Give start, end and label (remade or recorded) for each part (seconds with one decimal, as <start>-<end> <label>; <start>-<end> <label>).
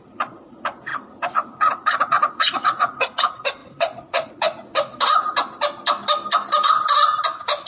0.0-4.9 remade; 4.9-7.7 recorded